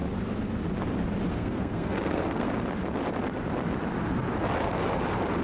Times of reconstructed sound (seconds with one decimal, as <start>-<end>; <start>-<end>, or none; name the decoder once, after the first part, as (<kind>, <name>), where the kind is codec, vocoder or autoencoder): 1.3-2.5 (codec, SNAC)

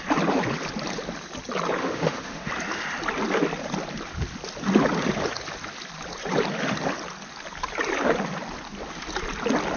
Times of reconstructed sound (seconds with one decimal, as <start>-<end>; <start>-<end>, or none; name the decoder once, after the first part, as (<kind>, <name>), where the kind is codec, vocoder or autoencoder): 1.8-2.5 (autoencoder, DAC-VAE)

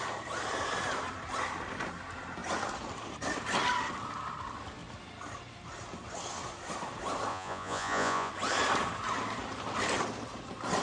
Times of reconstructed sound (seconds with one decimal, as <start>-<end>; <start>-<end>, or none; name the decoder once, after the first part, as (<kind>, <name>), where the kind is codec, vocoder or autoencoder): 7.3-8.3 (vocoder, Vocos)

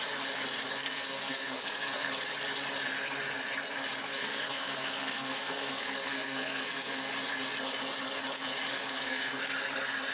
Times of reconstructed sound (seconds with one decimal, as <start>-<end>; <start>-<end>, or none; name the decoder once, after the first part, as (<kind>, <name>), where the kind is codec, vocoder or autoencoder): 0.8-2.1 (codec, SNAC); 4.1-7.1; 8.7-9.4

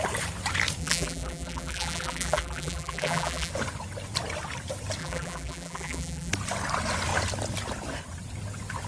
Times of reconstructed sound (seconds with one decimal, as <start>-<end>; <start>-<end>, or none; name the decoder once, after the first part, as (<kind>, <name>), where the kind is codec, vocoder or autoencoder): 0.8-3.5 (vocoder, BigVGAN v2); 5.0-6.3

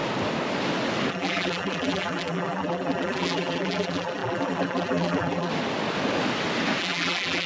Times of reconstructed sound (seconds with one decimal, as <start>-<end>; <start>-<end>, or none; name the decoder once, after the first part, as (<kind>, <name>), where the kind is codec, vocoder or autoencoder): 1.1-5.5 (vocoder, BigVGAN v2); 6.8-7.5

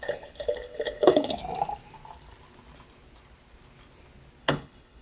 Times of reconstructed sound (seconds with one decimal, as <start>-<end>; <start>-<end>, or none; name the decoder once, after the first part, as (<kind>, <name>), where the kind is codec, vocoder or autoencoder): 0.0-1.4 (codec, HILCodec); 4.4-5.0

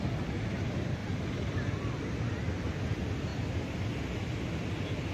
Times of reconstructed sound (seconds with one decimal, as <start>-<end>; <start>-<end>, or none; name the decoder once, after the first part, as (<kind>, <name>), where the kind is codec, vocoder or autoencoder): none